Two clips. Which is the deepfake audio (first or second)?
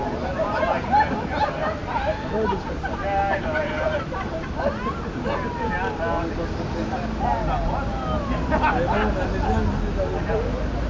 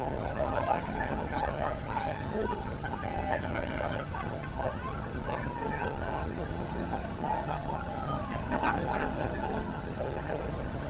second